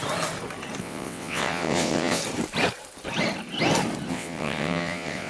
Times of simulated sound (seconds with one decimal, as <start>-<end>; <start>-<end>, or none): 0.8-2.2; 4.1-5.3